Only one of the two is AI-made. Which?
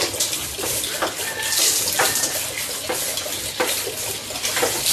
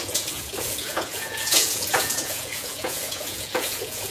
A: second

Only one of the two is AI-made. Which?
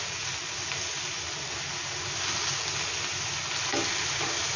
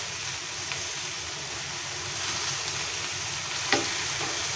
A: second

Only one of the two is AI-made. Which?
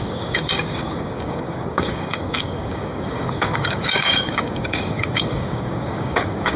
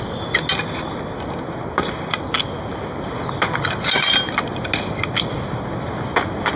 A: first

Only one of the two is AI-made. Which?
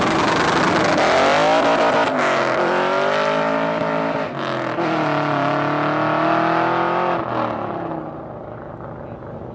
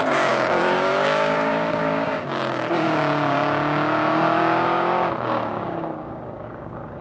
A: second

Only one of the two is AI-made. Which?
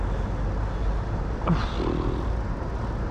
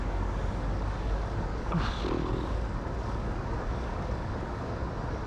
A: second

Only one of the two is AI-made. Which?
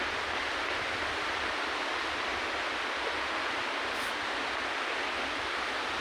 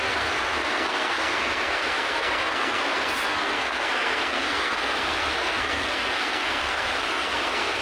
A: second